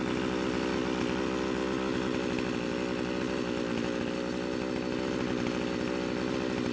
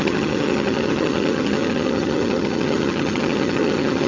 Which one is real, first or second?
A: first